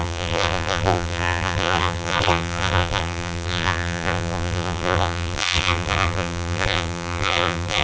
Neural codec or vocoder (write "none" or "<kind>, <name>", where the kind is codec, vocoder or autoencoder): vocoder, BigVGAN v2